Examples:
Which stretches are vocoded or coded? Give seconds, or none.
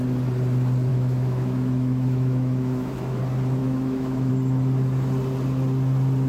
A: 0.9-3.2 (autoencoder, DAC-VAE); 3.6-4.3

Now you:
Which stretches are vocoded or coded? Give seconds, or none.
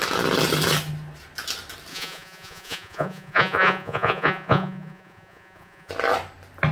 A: 1.9-5.9 (vocoder, Vocos)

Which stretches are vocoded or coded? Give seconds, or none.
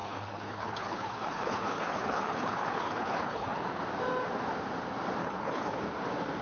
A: 0.0-3.8 (codec, HILCodec); 5.2-5.8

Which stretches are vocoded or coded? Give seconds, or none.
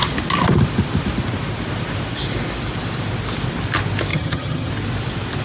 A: 4.1-4.7 (vocoder, HiFi-GAN)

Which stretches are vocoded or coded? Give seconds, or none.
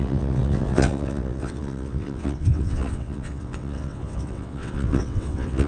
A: 0.0-5.7 (vocoder, WaveNeXt)